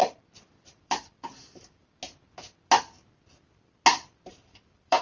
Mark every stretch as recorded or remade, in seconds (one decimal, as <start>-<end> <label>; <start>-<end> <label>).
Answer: 0.0-2.0 remade; 2.0-4.3 recorded; 4.3-5.0 remade